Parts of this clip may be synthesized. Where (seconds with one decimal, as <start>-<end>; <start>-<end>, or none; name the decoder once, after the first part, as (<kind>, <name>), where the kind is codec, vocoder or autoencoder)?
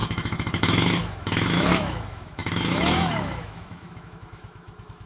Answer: 0.0-5.1 (autoencoder, DAC-VAE)